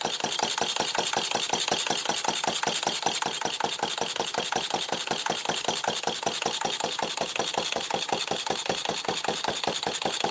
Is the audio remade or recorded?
recorded